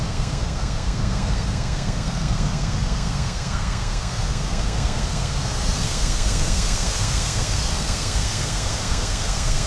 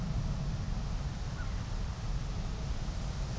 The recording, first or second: second